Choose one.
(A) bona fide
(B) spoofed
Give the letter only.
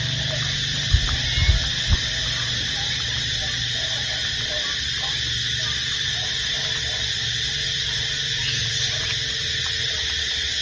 A